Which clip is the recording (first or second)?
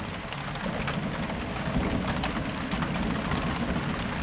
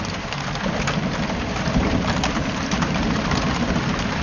first